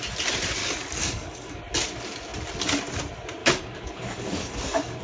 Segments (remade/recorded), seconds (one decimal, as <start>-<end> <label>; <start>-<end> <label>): 0.0-0.6 recorded; 0.6-1.6 remade; 1.6-3.4 recorded; 3.4-5.0 remade